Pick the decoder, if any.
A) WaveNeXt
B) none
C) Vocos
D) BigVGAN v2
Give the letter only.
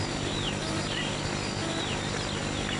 B